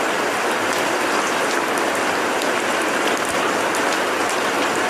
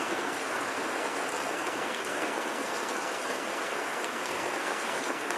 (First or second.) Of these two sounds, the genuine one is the first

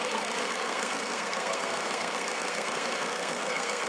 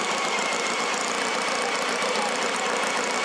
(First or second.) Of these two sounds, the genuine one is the second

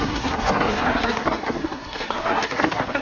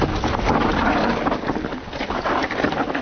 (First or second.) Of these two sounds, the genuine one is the second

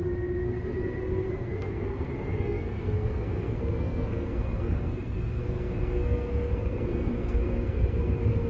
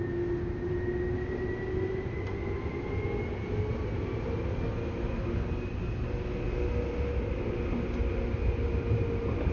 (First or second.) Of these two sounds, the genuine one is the second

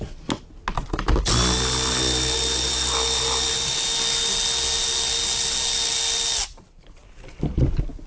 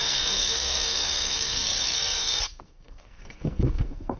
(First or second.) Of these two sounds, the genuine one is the first